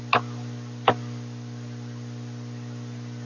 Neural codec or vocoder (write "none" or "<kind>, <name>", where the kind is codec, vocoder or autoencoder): none